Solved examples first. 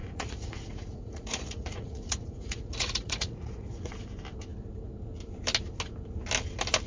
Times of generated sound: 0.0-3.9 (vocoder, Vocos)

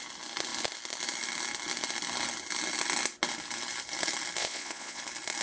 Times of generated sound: 4.4-5.0 (vocoder, Vocos)

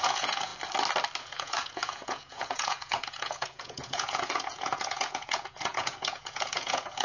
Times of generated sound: 0.0-0.5 (vocoder, Vocos); 1.2-7.0

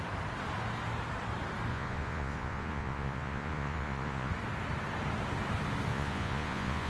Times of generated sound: 1.7-4.3 (vocoder, Vocos); 5.9-6.9

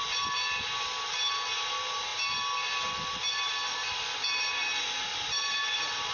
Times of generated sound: none